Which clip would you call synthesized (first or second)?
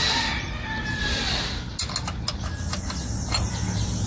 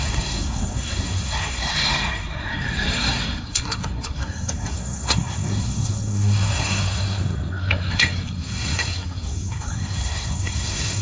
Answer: second